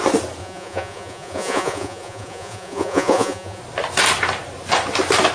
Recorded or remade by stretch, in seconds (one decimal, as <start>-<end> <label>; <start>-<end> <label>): 0.0-0.4 recorded; 0.4-3.6 remade; 3.6-5.3 recorded